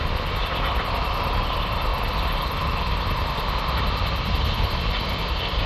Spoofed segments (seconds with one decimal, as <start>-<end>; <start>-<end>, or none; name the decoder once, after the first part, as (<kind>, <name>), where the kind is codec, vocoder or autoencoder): none